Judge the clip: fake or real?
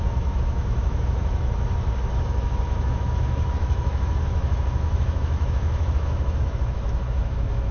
fake